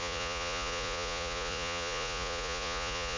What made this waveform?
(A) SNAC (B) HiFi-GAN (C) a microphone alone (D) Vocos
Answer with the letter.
D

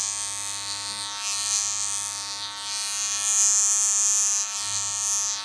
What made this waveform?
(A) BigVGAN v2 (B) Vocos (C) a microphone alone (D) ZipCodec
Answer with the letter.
C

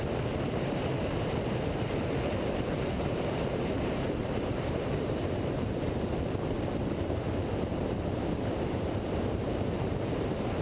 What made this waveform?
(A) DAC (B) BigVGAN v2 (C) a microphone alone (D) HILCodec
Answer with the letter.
B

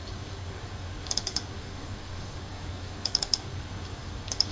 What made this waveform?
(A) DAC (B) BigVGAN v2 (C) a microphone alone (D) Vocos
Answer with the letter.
A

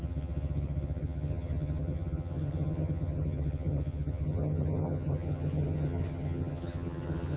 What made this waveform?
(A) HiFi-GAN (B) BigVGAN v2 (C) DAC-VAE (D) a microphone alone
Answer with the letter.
A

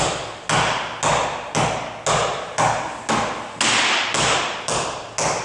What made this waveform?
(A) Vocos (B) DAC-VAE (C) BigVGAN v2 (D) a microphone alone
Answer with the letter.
D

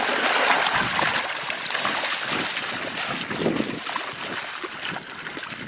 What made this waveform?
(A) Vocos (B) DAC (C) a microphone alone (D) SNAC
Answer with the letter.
C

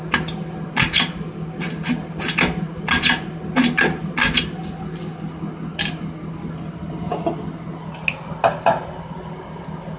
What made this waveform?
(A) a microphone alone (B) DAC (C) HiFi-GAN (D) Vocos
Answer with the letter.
A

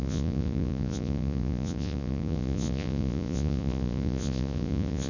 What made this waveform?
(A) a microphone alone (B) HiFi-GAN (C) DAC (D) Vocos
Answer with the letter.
D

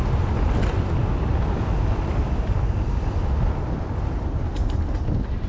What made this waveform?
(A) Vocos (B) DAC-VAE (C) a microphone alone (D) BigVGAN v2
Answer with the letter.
C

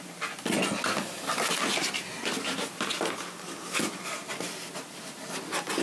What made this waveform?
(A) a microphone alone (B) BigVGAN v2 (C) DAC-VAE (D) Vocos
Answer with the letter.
A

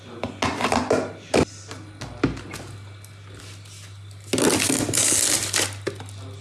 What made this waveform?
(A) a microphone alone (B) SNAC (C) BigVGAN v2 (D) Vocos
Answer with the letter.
A